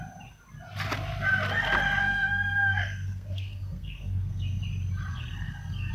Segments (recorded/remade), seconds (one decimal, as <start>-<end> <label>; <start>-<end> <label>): 0.0-2.0 recorded; 2.0-4.6 remade; 4.6-5.1 recorded; 5.1-5.9 remade